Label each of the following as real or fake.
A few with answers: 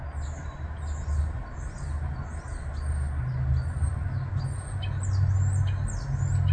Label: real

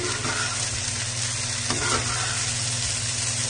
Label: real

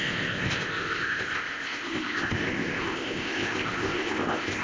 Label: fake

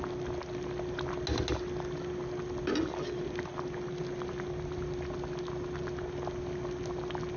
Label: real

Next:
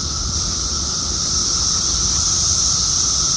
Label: fake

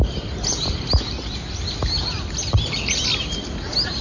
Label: real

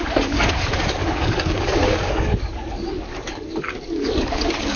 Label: fake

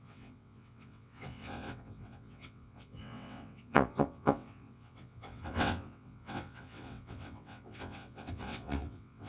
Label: fake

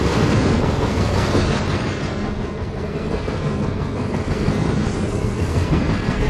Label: fake